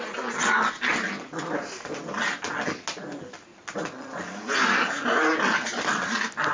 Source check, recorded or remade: recorded